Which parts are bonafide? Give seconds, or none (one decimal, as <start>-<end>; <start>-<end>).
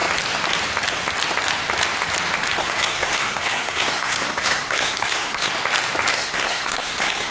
0.0-2.6; 5.5-6.1